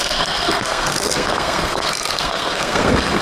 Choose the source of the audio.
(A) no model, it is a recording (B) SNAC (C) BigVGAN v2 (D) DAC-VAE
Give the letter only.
B